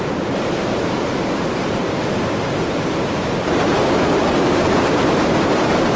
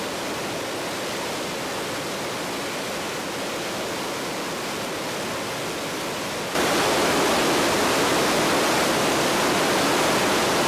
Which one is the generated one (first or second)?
first